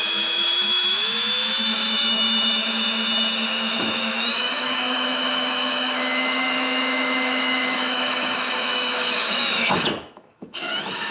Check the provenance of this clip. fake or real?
fake